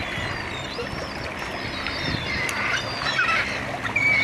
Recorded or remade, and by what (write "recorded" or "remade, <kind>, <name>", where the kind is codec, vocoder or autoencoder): remade, vocoder, BigVGAN v2